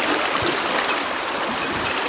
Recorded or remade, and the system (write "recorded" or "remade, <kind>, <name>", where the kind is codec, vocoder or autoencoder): remade, vocoder, BigVGAN v2